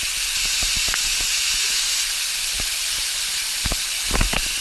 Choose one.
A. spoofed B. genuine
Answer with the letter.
B